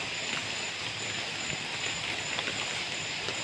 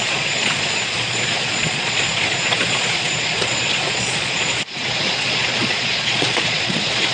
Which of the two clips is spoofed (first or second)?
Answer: second